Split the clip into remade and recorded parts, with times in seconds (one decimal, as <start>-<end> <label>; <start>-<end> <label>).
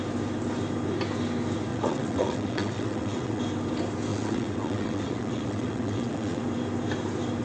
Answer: 0.0-1.7 recorded; 1.7-3.4 remade; 3.4-4.1 recorded; 4.1-6.4 remade; 6.4-7.4 recorded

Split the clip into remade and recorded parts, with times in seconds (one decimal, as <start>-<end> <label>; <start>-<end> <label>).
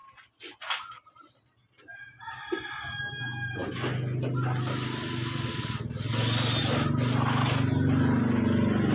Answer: 0.0-8.9 recorded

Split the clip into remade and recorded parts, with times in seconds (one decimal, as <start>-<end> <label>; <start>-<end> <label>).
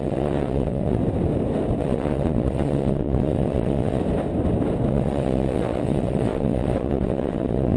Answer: 0.0-1.0 remade; 1.0-1.8 recorded; 1.8-4.0 remade; 4.0-4.9 recorded; 4.9-7.8 remade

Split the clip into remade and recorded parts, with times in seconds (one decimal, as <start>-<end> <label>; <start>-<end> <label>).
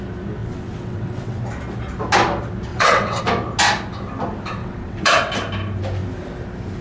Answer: 0.0-0.4 recorded; 0.4-1.4 remade; 1.4-2.7 recorded; 2.7-3.2 remade; 3.2-4.6 recorded; 4.6-5.3 remade; 5.3-6.8 recorded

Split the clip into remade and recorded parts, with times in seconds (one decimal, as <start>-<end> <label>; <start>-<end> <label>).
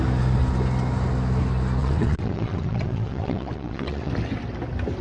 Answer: 0.0-1.8 recorded; 1.8-4.1 remade; 4.1-5.0 recorded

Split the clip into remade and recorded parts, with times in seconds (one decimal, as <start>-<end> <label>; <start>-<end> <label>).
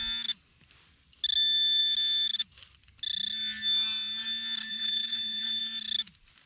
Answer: 0.0-4.7 recorded; 4.7-5.6 remade; 5.6-6.5 recorded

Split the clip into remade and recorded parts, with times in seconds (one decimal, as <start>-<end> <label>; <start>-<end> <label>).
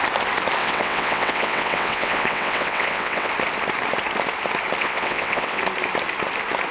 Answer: 0.0-0.6 recorded; 0.6-3.3 remade; 3.3-4.8 recorded; 4.8-5.6 remade; 5.6-6.7 recorded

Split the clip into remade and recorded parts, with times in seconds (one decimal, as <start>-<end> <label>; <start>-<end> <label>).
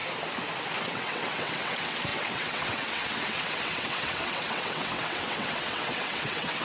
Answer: 0.0-0.8 recorded; 0.8-6.6 remade